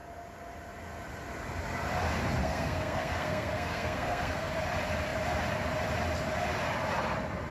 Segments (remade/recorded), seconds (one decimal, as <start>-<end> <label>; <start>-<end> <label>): 0.0-2.4 recorded; 2.4-4.5 remade; 4.5-7.5 recorded

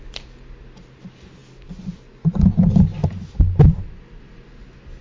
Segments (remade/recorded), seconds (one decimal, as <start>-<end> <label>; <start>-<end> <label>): 0.0-5.0 recorded

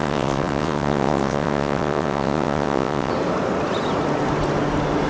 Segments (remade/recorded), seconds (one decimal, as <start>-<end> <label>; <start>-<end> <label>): 0.0-3.1 remade; 3.1-5.1 recorded

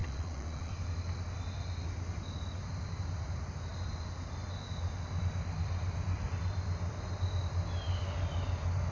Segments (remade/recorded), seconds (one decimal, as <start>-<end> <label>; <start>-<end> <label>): 0.0-0.7 remade; 0.7-8.9 recorded

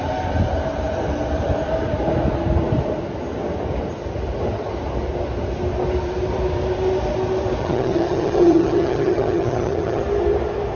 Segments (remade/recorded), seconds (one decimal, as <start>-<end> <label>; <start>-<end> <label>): 0.0-7.6 recorded; 7.6-10.0 remade; 10.0-10.8 recorded

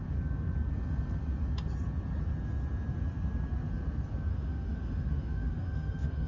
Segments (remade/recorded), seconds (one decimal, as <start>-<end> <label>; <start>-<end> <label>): 0.0-4.3 recorded; 4.3-6.3 remade